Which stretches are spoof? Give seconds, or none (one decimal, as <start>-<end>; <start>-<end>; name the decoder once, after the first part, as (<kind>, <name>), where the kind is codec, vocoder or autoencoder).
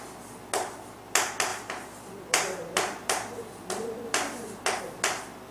1.5-4.8 (vocoder, BigVGAN v2)